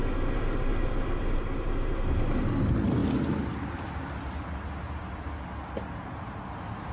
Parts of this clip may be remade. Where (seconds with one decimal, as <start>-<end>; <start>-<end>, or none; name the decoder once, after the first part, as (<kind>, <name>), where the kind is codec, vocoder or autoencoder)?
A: none